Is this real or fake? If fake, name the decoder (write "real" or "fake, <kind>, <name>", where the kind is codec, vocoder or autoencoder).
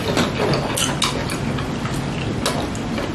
real